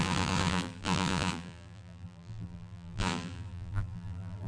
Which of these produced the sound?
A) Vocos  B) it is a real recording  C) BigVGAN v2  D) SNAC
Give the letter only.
C